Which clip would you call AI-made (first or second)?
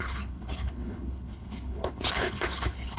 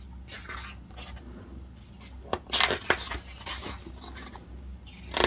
first